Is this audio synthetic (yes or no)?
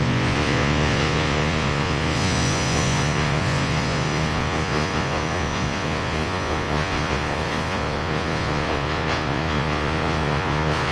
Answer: yes